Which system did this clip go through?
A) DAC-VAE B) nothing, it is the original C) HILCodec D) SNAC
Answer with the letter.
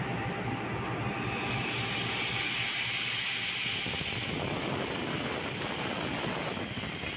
B